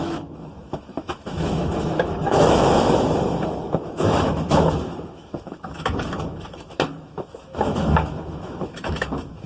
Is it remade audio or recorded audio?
remade